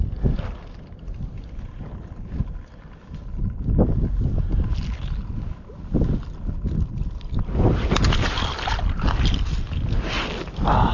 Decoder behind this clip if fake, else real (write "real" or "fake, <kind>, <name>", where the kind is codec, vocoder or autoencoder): real